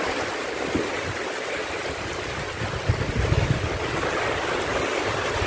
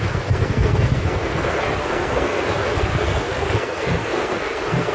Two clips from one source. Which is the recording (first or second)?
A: first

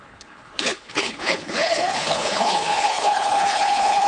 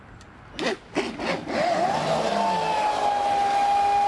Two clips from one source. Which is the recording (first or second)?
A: second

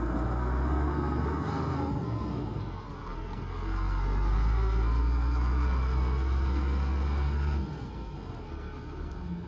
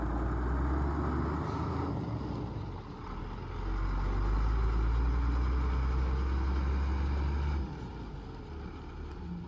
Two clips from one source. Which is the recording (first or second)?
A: second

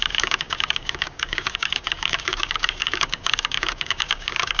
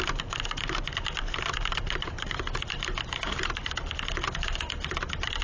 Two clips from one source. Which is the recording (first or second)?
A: second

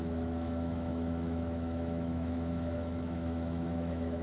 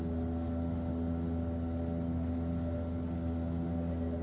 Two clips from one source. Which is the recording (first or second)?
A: second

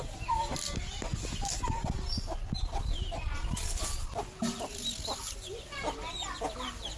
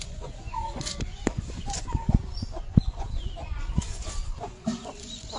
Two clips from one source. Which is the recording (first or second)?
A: first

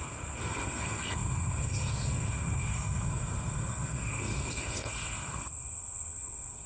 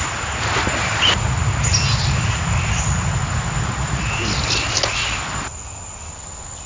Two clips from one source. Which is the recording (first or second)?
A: second